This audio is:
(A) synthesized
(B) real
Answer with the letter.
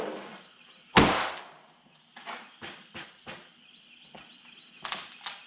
B